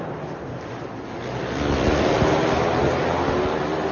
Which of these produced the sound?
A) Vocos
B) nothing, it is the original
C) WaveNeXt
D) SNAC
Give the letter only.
B